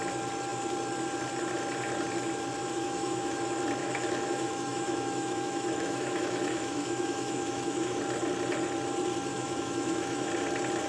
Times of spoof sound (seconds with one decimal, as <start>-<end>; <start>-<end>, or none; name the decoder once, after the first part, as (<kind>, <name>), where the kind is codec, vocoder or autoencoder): 2.6-3.4 (autoencoder, DAC-VAE); 3.8-8.0; 9.3-10.3